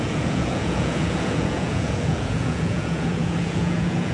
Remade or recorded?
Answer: remade